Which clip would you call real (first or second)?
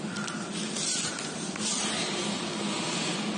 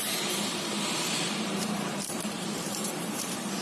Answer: first